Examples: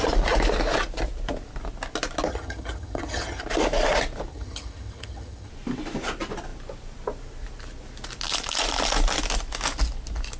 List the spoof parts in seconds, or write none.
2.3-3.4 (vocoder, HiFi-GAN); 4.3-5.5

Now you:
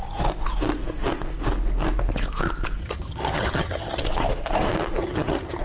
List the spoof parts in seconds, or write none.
2.8-4.0 (vocoder, HiFi-GAN); 5.0-5.6

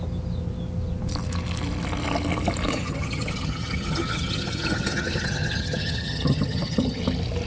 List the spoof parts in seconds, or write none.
2.7-7.0 (vocoder, HiFi-GAN)

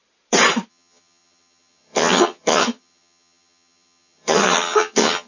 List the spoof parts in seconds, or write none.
0.7-5.3 (vocoder, HiFi-GAN)

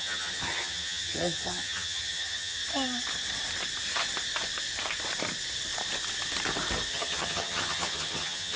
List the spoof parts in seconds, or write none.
0.0-2.6 (vocoder, HiFi-GAN); 6.9-8.6

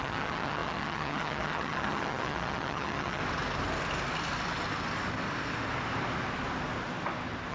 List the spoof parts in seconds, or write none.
0.0-3.2 (vocoder, HiFi-GAN)

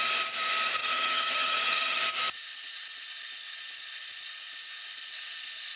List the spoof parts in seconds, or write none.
0.8-2.0 (vocoder, HiFi-GAN)